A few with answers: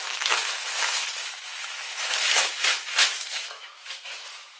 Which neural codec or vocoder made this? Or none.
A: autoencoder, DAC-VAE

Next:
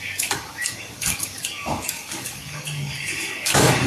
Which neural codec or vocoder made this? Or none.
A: codec, DAC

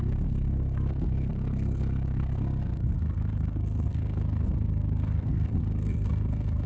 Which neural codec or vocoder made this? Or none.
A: codec, SNAC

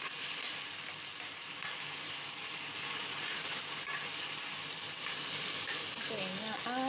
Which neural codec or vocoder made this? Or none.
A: none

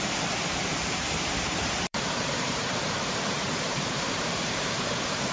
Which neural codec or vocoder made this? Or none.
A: vocoder, BigVGAN v2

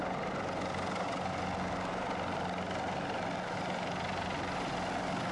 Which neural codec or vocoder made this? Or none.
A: none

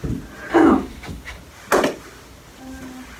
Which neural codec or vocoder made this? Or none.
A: none